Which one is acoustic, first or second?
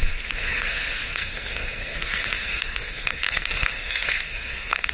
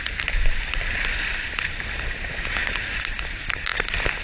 second